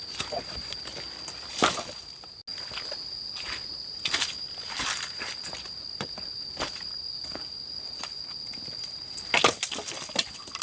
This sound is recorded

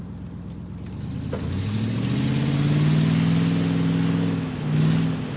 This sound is recorded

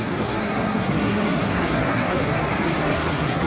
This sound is remade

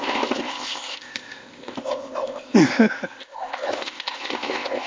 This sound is remade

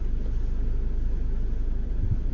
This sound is remade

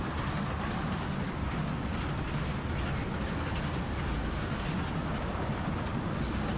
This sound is recorded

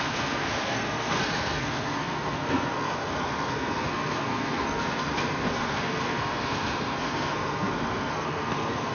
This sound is remade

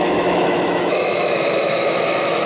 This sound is remade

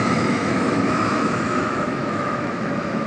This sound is remade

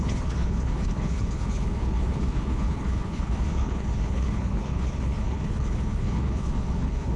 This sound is remade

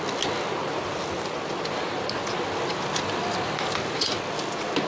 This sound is recorded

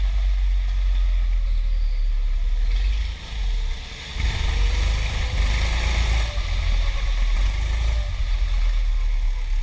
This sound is recorded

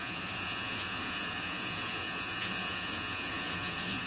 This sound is remade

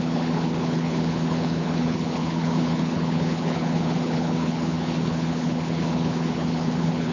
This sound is remade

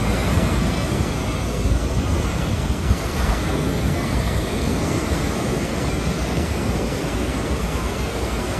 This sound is remade